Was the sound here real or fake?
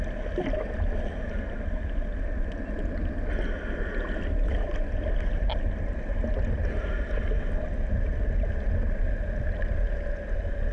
real